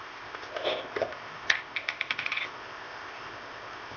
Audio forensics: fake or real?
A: fake